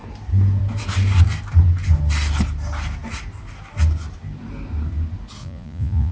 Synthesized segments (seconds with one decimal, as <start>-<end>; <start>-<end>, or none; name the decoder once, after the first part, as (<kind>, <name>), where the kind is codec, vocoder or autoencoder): 5.4-6.1 (vocoder, Vocos)